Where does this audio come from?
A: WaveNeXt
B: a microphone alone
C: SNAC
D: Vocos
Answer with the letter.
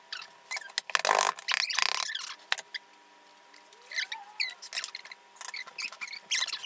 B